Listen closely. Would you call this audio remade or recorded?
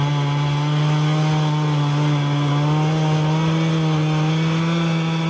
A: recorded